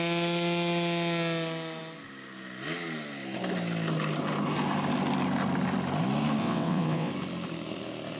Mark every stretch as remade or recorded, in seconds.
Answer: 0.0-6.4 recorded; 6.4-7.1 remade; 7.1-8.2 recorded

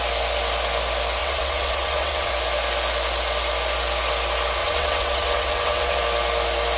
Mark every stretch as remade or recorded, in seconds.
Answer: 0.0-1.2 recorded; 1.2-2.3 remade; 2.3-4.6 recorded; 4.6-6.0 remade; 6.0-6.8 recorded

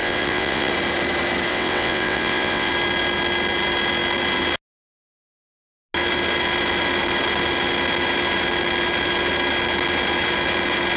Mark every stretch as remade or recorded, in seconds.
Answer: 0.0-0.7 remade; 0.7-1.5 recorded; 1.5-2.7 remade; 2.7-11.0 recorded